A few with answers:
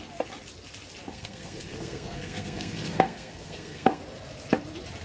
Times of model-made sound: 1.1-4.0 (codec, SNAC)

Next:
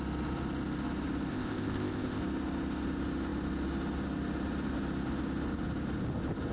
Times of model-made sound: 1.3-2.2 (codec, ZipCodec)